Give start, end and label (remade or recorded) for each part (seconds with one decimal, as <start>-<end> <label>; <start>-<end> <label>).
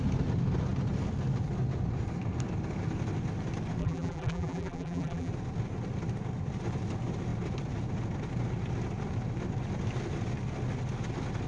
0.0-3.8 recorded; 3.8-5.3 remade; 5.3-11.5 recorded